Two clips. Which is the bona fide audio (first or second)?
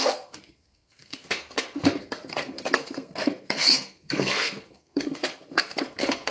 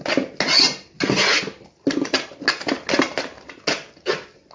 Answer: second